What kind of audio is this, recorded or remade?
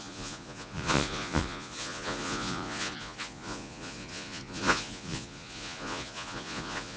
remade